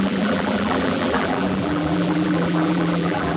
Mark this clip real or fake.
fake